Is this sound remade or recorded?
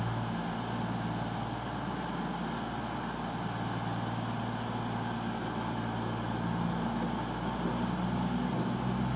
recorded